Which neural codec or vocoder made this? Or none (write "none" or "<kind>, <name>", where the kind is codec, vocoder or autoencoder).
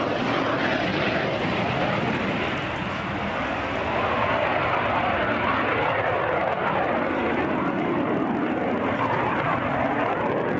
none